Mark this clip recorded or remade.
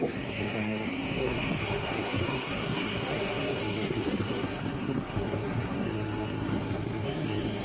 remade